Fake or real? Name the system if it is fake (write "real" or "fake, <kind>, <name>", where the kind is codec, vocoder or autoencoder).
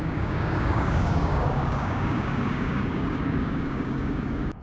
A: fake, codec, DAC